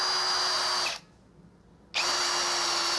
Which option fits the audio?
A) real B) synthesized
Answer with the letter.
A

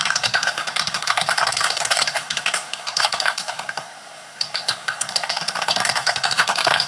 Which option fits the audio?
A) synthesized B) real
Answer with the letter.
A